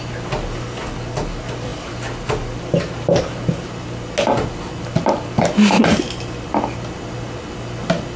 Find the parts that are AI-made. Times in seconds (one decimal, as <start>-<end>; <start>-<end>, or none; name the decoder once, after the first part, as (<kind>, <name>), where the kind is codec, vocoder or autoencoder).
none